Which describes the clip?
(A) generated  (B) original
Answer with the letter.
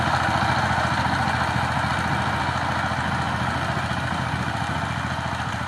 B